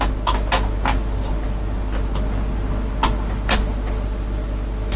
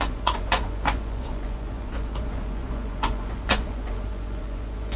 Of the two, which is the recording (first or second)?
first